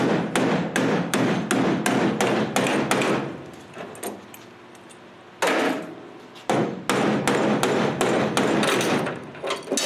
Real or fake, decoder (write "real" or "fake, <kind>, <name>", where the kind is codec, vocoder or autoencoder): real